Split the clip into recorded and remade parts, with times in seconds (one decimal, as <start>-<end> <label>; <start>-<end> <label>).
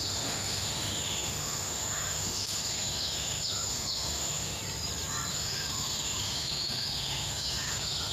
0.0-4.6 remade; 4.6-5.3 recorded; 5.3-8.1 remade